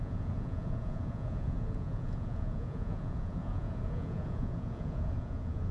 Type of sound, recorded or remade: remade